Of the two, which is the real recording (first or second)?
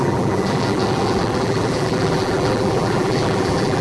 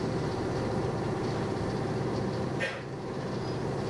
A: second